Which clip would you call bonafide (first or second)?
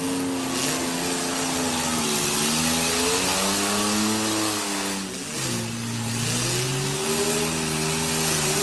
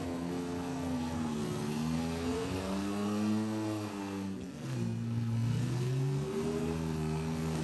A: first